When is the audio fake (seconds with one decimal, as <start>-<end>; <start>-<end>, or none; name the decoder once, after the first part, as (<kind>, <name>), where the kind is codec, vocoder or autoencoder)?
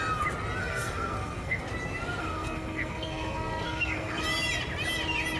0.6-1.6 (codec, SNAC); 2.2-4.2